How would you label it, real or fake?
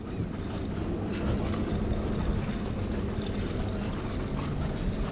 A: real